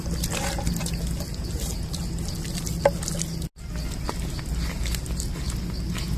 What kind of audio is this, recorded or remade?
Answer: recorded